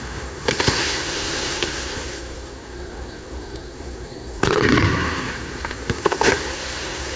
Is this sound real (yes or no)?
no